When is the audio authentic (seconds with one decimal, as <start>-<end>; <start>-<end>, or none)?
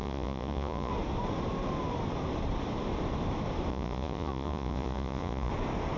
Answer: 0.9-3.7; 5.5-6.0